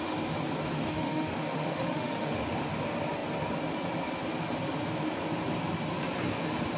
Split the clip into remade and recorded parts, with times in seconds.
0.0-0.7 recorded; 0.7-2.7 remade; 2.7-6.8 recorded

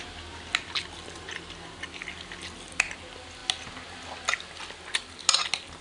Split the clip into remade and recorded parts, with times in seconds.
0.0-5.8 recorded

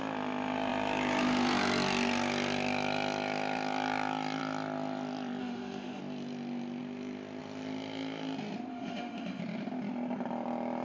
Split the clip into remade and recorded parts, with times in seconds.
0.0-5.4 recorded; 5.4-6.0 remade; 6.0-8.7 recorded; 8.7-9.4 remade; 9.4-10.8 recorded

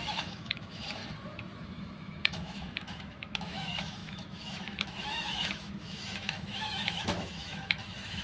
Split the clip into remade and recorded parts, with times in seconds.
0.0-1.0 remade; 1.0-1.6 recorded; 1.6-8.2 remade

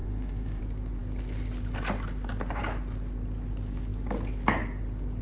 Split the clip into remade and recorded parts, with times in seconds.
0.0-0.6 remade; 0.6-5.2 recorded

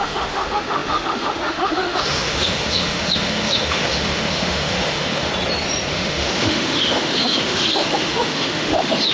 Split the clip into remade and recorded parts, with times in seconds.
0.0-5.3 remade; 5.3-5.9 recorded; 5.9-9.1 remade

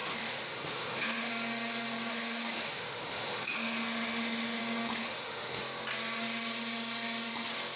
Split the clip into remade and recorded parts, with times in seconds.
0.0-1.3 remade; 1.3-2.1 recorded; 2.1-4.6 remade; 4.6-5.0 recorded; 5.0-5.6 remade; 5.6-7.8 recorded